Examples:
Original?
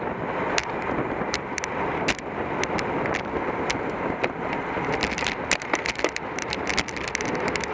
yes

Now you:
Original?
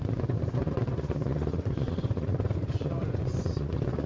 no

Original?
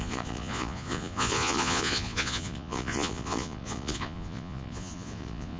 no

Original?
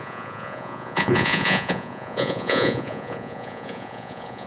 no